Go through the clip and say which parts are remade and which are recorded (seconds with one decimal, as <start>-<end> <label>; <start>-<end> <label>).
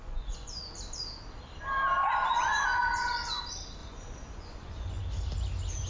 0.0-0.7 remade; 0.7-2.0 recorded; 2.0-3.4 remade; 3.4-3.8 recorded; 3.8-5.0 remade; 5.0-5.9 recorded